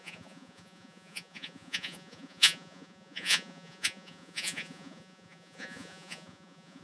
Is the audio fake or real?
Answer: fake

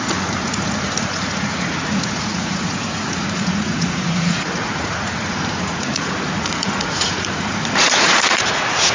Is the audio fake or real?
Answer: fake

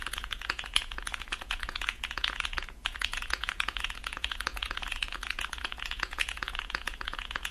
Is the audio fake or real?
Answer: fake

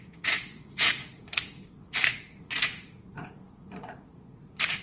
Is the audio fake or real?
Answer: fake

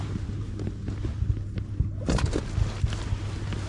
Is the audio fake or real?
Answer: real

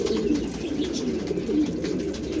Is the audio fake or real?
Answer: real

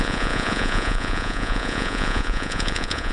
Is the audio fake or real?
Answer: fake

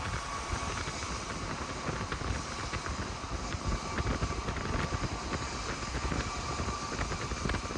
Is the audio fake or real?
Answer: real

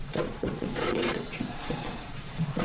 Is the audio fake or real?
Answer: fake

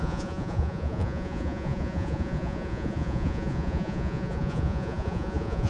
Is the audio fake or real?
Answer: fake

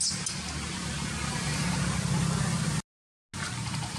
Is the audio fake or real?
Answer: real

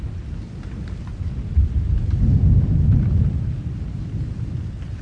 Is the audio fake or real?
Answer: real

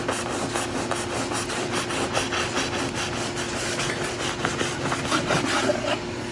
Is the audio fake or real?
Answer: real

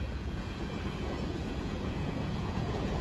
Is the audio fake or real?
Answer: fake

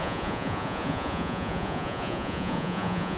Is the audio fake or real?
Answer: fake